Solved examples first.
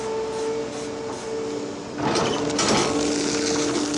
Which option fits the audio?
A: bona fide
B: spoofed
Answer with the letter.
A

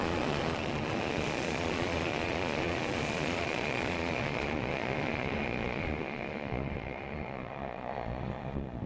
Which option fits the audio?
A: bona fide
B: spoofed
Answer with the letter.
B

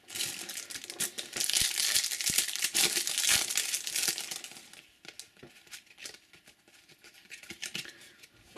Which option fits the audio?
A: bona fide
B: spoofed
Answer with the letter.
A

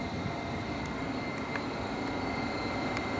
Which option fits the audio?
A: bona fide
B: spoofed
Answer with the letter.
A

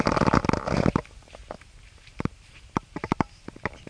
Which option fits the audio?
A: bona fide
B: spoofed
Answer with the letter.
A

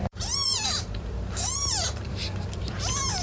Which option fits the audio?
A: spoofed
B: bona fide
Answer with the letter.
A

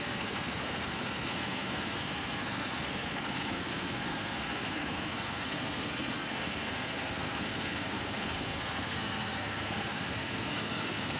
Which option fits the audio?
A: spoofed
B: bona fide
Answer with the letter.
A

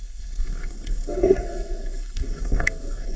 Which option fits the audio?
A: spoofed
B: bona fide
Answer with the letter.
A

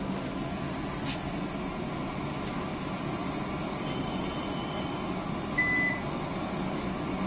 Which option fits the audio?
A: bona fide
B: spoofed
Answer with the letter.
A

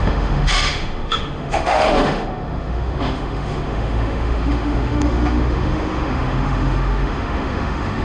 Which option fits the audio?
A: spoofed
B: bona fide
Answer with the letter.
A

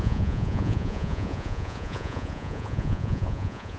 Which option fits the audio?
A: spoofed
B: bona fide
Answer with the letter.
A